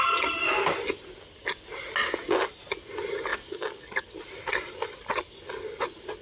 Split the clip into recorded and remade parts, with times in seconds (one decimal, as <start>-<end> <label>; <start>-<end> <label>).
0.0-3.3 recorded; 3.3-4.0 remade; 4.0-6.2 recorded